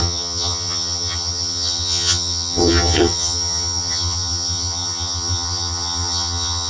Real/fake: fake